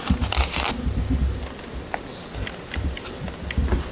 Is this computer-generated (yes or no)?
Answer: no